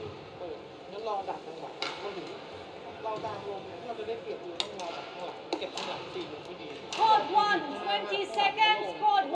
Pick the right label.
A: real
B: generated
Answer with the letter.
A